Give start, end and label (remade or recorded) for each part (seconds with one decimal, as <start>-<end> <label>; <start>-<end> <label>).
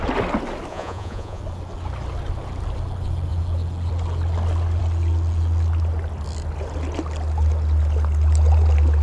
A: 0.0-0.7 recorded; 0.7-1.4 remade; 1.4-9.0 recorded